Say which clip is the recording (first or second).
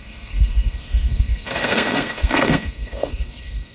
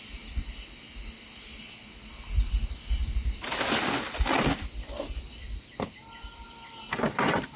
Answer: second